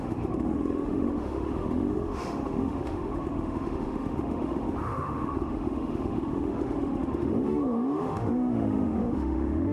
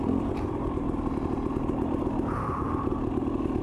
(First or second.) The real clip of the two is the second